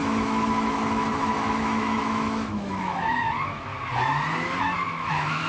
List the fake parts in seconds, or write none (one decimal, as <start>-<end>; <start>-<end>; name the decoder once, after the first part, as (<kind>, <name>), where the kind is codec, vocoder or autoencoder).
0.0-3.7 (autoencoder, DAC-VAE); 4.6-5.5